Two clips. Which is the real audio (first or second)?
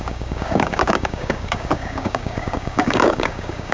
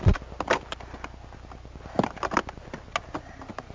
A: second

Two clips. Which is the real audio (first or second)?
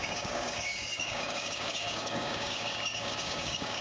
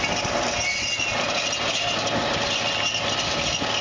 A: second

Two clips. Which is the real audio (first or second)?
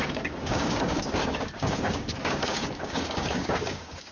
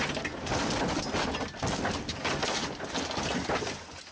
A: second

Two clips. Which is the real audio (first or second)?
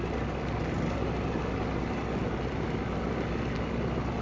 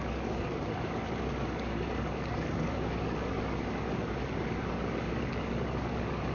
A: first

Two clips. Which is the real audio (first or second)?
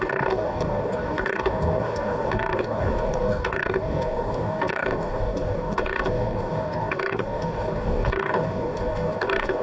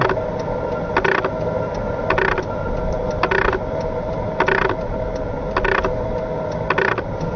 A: second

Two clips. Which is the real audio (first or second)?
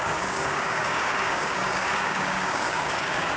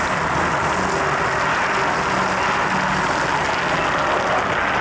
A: second